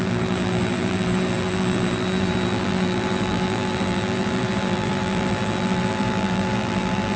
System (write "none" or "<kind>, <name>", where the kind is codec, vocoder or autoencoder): vocoder, BigVGAN v2